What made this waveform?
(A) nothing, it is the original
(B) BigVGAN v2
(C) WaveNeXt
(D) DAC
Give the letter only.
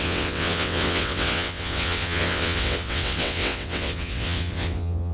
C